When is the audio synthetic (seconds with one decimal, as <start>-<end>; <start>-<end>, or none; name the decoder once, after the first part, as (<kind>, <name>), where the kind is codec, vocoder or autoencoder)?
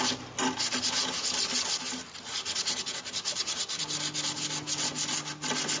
3.3-3.8 (vocoder, BigVGAN v2)